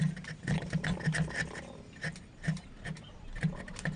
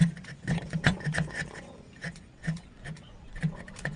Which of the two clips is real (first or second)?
first